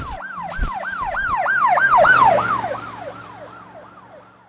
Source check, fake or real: real